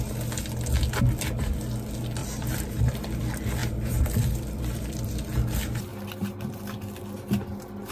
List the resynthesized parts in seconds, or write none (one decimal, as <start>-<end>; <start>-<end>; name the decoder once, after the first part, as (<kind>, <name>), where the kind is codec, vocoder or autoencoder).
2.2-3.2 (vocoder, BigVGAN v2); 3.6-5.1; 5.9-6.8